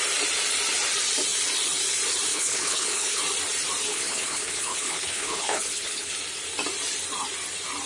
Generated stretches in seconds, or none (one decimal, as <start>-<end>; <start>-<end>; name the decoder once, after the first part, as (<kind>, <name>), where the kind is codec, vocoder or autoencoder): 2.3-3.2 (codec, HILCodec); 3.9-6.1